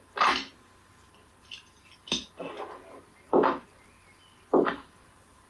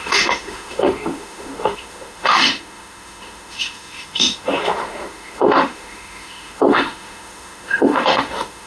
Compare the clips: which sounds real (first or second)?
first